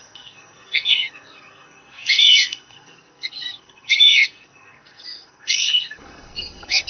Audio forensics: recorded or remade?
remade